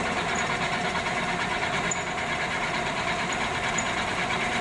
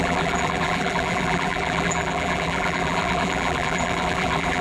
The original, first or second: first